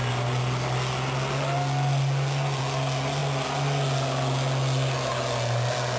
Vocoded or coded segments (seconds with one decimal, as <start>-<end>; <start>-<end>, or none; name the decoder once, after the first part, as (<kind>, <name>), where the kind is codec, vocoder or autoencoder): none